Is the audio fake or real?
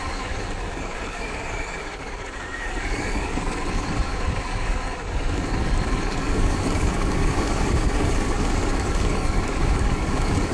fake